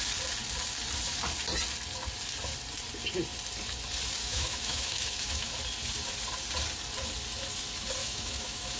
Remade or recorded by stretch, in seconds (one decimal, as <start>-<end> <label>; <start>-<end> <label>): 0.0-4.2 recorded; 4.2-5.5 remade; 5.5-8.0 recorded; 8.0-8.8 remade